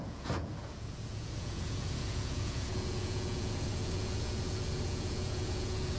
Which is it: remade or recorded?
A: remade